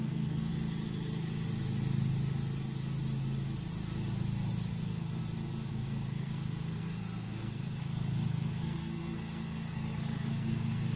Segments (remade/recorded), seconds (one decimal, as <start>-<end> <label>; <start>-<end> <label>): 0.0-0.5 remade; 0.5-4.7 recorded; 4.7-5.2 remade; 5.2-5.7 recorded; 5.7-11.0 remade